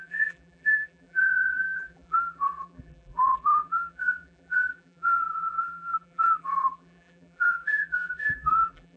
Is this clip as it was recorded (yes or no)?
no